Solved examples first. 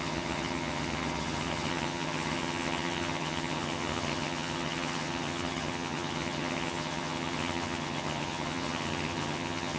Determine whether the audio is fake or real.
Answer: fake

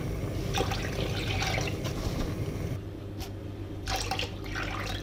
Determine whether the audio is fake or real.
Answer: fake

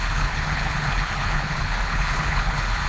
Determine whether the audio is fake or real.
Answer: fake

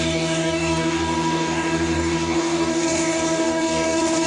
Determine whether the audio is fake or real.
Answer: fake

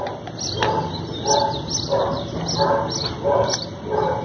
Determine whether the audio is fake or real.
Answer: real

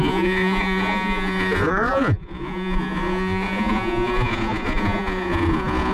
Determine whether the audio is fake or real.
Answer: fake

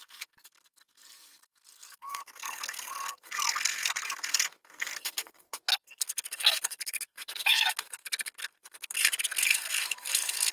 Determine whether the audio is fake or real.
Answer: fake